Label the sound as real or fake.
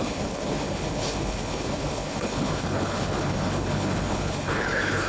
fake